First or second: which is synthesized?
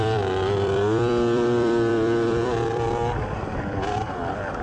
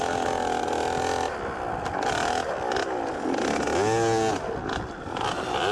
first